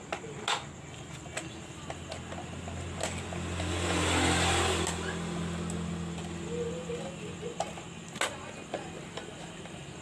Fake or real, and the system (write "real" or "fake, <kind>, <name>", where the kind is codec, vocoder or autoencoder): real